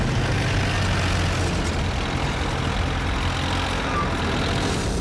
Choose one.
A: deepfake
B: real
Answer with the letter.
B